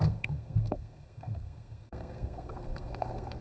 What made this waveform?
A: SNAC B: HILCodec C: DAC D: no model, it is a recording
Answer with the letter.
A